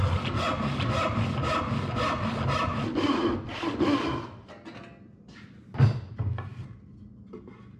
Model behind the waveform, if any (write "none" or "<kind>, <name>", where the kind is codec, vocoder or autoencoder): none